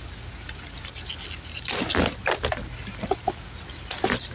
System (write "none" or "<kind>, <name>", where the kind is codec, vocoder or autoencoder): none